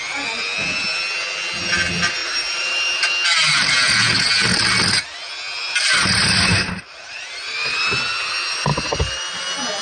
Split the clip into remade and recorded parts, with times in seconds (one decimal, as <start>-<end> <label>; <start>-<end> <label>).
0.0-2.2 recorded; 2.2-3.1 remade; 3.1-5.6 recorded; 5.6-7.8 remade; 7.8-8.7 recorded; 8.7-9.4 remade; 9.4-9.8 recorded